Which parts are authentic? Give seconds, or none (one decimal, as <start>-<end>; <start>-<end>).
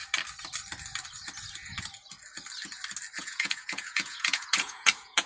0.0-3.2